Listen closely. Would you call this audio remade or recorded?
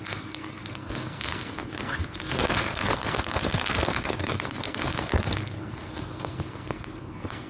remade